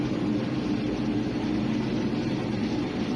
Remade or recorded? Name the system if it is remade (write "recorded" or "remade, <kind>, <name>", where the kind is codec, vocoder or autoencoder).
recorded